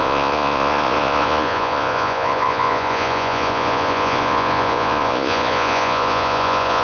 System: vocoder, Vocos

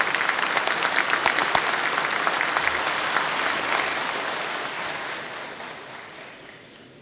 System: none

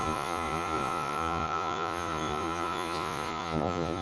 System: vocoder, Vocos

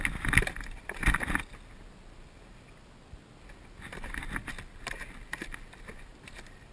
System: none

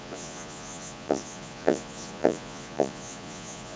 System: vocoder, Vocos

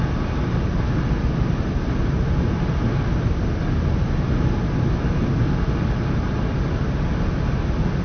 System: none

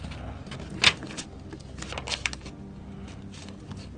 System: none